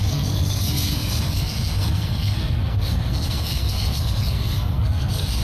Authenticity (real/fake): fake